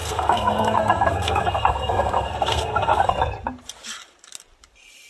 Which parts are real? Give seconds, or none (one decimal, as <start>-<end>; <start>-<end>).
3.1-5.1